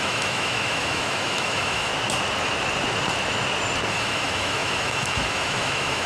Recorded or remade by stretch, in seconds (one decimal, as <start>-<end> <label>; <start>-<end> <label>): 0.0-1.9 remade; 1.9-3.9 recorded; 3.9-6.1 remade